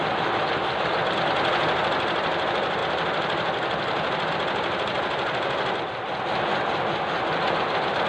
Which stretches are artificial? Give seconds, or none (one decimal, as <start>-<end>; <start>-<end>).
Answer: none